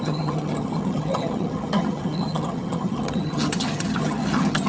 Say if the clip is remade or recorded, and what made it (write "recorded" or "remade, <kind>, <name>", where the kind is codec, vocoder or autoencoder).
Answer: remade, vocoder, HiFi-GAN